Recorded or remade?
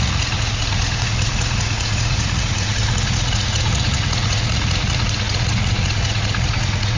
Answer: remade